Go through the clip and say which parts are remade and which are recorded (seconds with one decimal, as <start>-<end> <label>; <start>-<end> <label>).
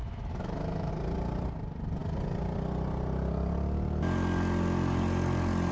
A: 0.0-0.9 remade; 0.9-5.7 recorded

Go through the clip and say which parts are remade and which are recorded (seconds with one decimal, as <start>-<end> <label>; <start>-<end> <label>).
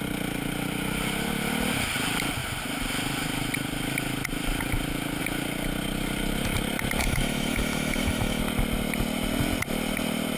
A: 0.0-7.0 recorded; 7.0-8.4 remade; 8.4-10.4 recorded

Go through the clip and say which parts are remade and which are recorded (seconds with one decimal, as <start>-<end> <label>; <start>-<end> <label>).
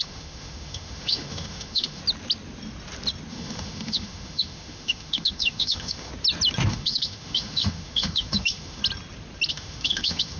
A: 0.0-2.0 remade; 2.0-3.3 recorded; 3.3-6.1 remade; 6.1-6.7 recorded; 6.7-8.8 remade; 8.8-9.5 recorded; 9.5-10.4 remade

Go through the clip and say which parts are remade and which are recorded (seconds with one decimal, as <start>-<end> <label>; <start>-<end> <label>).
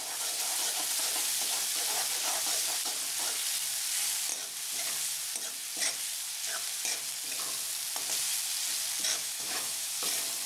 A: 0.0-9.1 recorded; 9.1-10.0 remade; 10.0-10.5 recorded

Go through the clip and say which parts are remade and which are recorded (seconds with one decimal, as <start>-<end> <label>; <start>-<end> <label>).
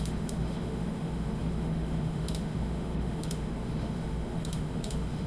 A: 0.0-5.3 remade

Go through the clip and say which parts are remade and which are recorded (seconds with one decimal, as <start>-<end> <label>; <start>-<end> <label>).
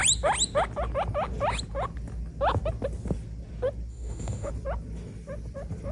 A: 0.0-3.9 recorded; 3.9-4.5 remade; 4.5-5.9 recorded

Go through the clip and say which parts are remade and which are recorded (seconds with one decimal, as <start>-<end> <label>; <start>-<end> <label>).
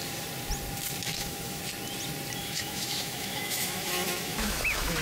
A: 0.0-1.0 recorded; 1.0-1.6 remade; 1.6-2.4 recorded; 2.4-5.0 remade